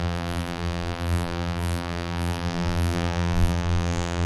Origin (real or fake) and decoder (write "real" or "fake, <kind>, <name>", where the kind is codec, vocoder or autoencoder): fake, vocoder, BigVGAN v2